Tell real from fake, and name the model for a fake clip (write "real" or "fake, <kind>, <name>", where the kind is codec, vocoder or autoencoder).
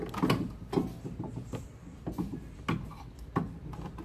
real